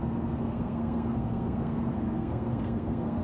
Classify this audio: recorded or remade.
remade